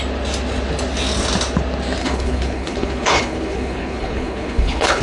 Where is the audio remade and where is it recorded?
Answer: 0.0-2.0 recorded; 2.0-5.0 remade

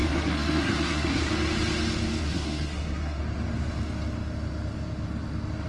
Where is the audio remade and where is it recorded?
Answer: 0.0-1.3 remade; 1.3-2.2 recorded; 2.2-3.2 remade; 3.2-5.7 recorded

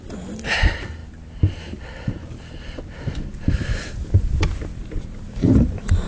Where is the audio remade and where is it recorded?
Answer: 0.0-6.1 recorded

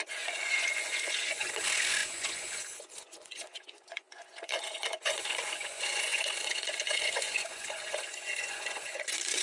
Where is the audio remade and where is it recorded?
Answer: 0.0-9.4 remade

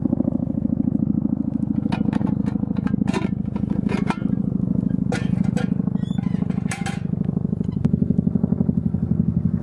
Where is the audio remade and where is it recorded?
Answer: 0.0-9.6 recorded

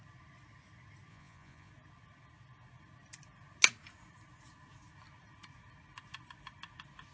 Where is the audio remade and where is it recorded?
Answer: 0.0-1.1 recorded; 1.1-1.7 remade; 1.7-7.1 recorded